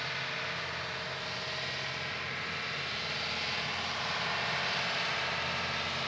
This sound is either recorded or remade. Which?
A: recorded